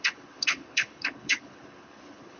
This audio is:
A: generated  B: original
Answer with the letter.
A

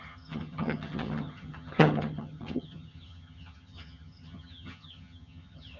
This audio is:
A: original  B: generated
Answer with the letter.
B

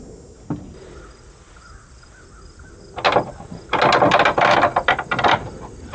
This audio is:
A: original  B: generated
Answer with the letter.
A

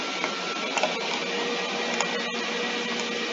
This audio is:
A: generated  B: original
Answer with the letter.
B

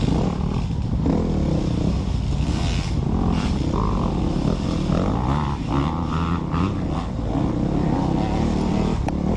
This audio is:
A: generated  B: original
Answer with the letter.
B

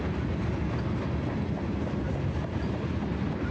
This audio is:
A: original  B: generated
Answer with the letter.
A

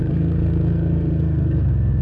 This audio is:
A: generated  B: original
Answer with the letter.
A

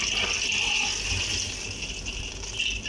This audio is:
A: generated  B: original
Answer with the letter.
B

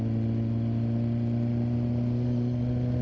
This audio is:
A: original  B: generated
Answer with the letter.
A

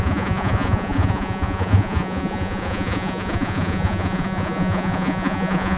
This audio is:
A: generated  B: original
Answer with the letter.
A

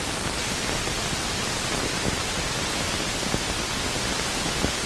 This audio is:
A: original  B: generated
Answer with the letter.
A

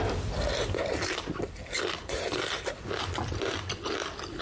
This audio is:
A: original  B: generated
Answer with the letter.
B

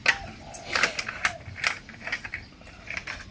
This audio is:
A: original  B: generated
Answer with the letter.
A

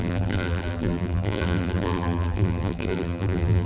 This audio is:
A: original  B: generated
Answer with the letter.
B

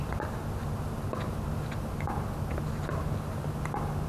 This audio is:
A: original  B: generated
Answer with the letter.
A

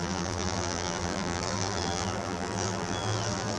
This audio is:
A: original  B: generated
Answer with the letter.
B